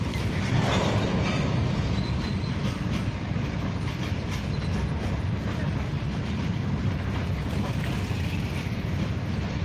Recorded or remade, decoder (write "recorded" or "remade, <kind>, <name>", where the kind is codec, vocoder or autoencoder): recorded